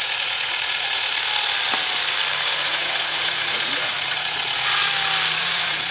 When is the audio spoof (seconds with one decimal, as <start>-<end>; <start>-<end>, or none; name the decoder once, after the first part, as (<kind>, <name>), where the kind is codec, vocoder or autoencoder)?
0.0-1.1 (vocoder, Vocos); 2.4-4.8; 5.4-5.9

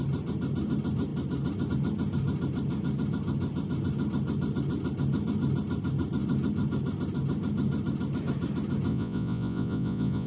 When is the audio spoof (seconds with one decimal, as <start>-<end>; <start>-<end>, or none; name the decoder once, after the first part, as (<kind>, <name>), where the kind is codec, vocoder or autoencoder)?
8.9-10.3 (vocoder, Vocos)